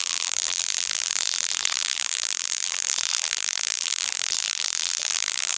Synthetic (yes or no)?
yes